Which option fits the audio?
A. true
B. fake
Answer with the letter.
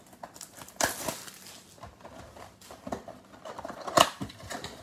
A